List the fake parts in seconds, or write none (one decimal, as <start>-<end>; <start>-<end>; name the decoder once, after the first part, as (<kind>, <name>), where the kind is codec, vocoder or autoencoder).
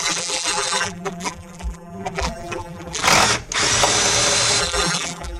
0.0-3.0 (vocoder, BigVGAN v2); 4.6-5.4